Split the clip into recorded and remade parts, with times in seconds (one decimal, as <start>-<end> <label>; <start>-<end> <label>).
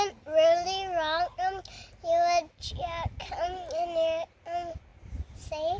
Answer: 0.0-5.8 recorded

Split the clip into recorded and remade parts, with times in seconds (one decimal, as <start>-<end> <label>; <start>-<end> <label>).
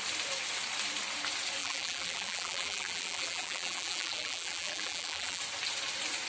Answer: 0.0-1.6 recorded; 1.6-5.4 remade; 5.4-6.3 recorded